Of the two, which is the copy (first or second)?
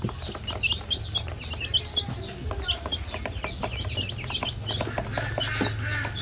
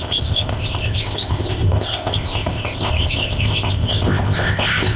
second